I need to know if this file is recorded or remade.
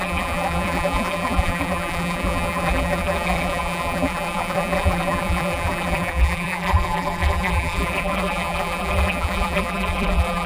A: remade